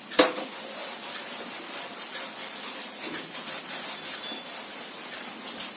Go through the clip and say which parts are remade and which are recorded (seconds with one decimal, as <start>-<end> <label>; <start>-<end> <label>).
0.0-5.8 recorded